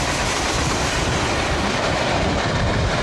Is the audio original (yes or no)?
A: no